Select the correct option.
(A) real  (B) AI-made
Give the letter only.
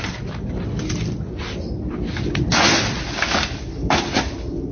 A